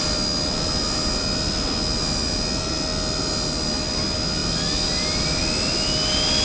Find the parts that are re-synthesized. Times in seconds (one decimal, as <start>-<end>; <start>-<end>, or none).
none